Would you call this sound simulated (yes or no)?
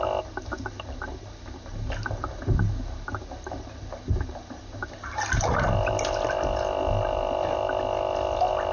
no